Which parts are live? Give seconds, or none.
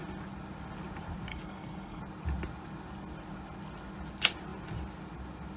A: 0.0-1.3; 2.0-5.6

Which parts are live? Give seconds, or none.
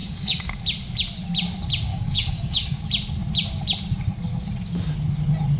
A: 0.5-1.9; 2.8-5.6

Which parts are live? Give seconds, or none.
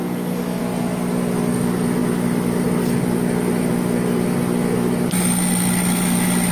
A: 0.6-6.5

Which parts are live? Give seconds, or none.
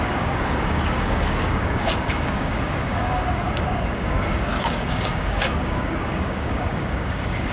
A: none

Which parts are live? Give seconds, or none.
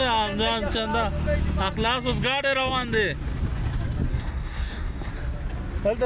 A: 0.0-4.1; 5.1-6.1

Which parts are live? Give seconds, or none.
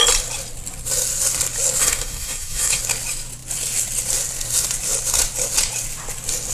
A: 0.0-1.8; 2.8-6.5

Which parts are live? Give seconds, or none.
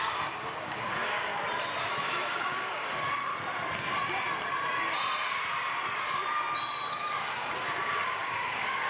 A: 1.3-1.9; 3.3-6.9